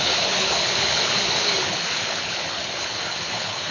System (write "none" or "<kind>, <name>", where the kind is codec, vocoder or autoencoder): codec, HILCodec